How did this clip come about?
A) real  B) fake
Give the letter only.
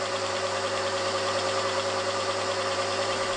B